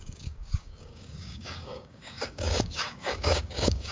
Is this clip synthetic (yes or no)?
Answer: yes